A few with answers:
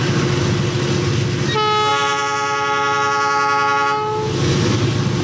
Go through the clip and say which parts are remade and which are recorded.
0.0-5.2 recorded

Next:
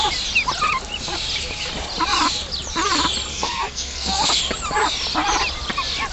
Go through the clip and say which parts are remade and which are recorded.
0.0-3.3 recorded; 3.3-4.4 remade; 4.4-6.1 recorded

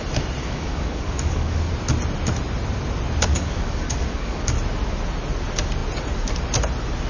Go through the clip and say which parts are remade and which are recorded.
0.0-0.4 recorded; 0.4-1.7 remade; 1.7-3.3 recorded; 3.3-4.4 remade; 4.4-7.1 recorded

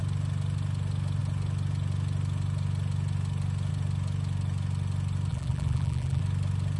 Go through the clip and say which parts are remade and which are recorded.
0.0-5.3 recorded; 5.3-6.2 remade; 6.2-6.8 recorded

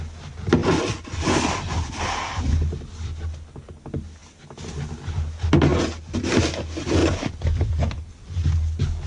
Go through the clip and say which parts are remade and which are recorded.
0.0-0.6 recorded; 0.6-2.5 remade; 2.5-7.0 recorded; 7.0-8.0 remade; 8.0-9.1 recorded

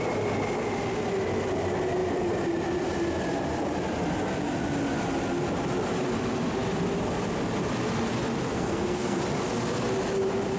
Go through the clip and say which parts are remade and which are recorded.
0.0-8.5 recorded; 8.5-9.2 remade; 9.2-10.6 recorded